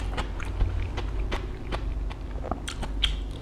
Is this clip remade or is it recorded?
recorded